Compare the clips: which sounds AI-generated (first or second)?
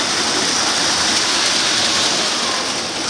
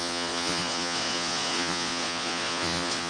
second